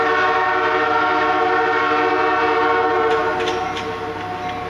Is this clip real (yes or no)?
yes